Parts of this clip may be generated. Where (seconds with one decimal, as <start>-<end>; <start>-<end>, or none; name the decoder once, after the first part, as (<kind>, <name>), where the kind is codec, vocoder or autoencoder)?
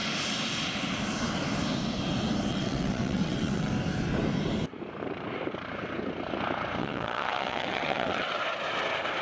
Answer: 2.5-3.7 (vocoder, WaveNeXt); 6.8-8.4